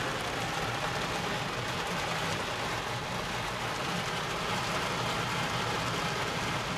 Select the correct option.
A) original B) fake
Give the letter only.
A